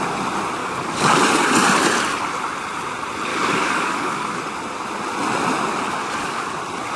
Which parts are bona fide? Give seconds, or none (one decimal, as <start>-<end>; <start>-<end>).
0.0-0.6; 1.2-3.3; 4.4-6.0; 6.5-7.0